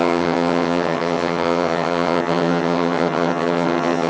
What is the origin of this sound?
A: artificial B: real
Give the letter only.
A